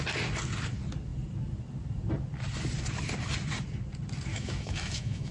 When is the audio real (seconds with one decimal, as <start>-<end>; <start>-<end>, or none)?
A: 0.0-4.3